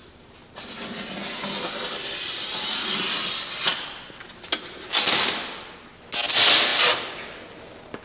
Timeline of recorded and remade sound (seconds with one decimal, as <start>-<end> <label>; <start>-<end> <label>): 0.0-8.0 recorded